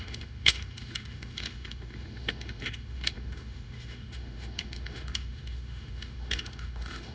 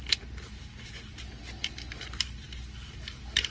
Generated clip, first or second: first